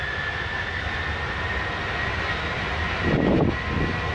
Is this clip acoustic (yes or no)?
yes